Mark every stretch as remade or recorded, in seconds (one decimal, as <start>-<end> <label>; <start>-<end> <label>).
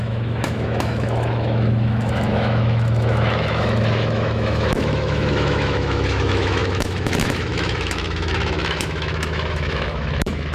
0.0-10.5 remade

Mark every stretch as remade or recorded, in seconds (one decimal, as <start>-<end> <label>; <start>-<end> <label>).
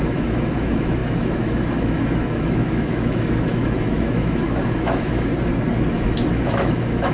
0.0-5.3 remade; 5.3-5.9 recorded; 5.9-7.1 remade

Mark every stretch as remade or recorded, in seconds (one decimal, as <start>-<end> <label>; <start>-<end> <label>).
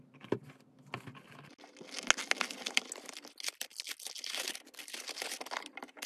0.0-6.1 recorded